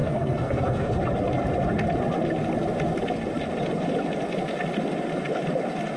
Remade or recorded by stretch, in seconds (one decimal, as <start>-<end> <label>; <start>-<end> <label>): 0.0-1.0 remade; 1.0-6.0 recorded

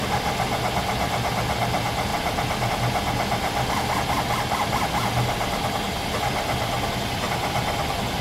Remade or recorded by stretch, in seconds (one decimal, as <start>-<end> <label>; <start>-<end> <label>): 0.0-8.2 recorded

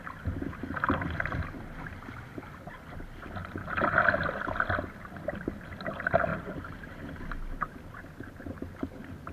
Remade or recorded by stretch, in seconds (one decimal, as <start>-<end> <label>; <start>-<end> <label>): 0.0-3.4 recorded; 3.4-4.2 remade; 4.2-6.3 recorded; 6.3-7.0 remade; 7.0-9.3 recorded

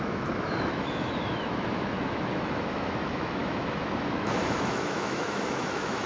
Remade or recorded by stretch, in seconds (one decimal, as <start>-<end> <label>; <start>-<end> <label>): 0.0-6.1 remade